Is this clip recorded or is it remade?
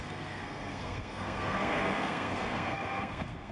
remade